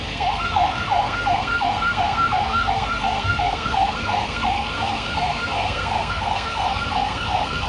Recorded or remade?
remade